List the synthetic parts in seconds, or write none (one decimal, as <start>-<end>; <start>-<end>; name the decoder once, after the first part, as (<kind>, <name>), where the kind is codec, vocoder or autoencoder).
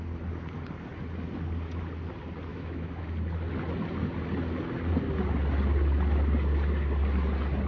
2.5-3.0 (autoencoder, DAC-VAE)